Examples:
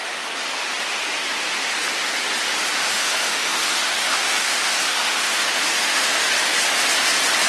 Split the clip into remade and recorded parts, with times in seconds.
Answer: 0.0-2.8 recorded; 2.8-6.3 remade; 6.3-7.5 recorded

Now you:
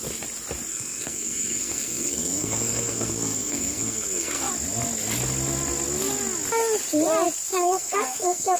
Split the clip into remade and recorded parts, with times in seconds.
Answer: 0.0-0.7 recorded; 0.7-4.5 remade; 4.5-7.5 recorded; 7.5-8.6 remade

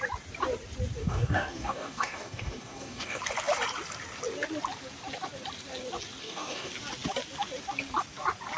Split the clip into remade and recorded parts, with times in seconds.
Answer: 0.0-1.0 recorded; 1.0-3.2 remade; 3.2-6.2 recorded; 6.2-6.7 remade; 6.7-8.6 recorded

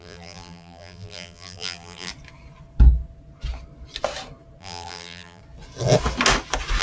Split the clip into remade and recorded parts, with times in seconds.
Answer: 0.0-2.1 remade; 2.1-4.6 recorded; 4.6-5.4 remade; 5.4-6.8 recorded

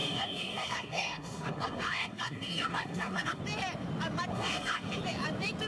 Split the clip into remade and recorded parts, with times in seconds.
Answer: 0.0-3.4 remade; 3.4-4.3 recorded; 4.3-5.0 remade; 5.0-5.7 recorded

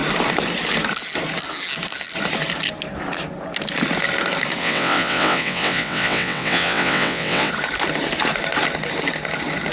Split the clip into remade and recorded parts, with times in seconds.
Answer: 0.0-4.6 recorded; 4.6-7.5 remade; 7.5-9.7 recorded

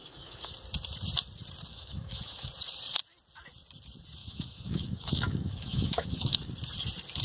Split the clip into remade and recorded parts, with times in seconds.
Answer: 0.0-0.5 remade; 0.5-1.7 recorded; 1.7-2.5 remade; 2.5-4.2 recorded; 4.2-6.5 remade; 6.5-7.2 recorded